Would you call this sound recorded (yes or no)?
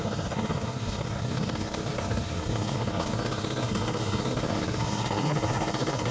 no